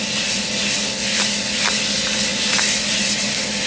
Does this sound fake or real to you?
real